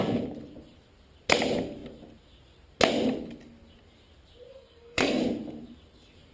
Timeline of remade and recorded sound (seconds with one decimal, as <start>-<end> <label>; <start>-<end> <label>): 0.0-4.5 recorded; 4.5-5.2 remade; 5.2-6.3 recorded